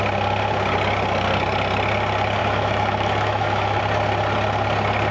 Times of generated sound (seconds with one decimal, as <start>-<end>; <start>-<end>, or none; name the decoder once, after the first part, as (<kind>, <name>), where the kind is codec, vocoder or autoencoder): 2.4-3.8 (autoencoder, DAC-VAE)